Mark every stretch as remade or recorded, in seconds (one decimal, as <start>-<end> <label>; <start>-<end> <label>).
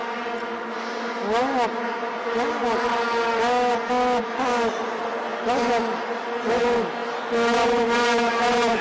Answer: 0.0-8.8 recorded